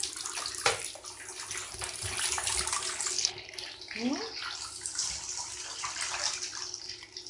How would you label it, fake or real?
real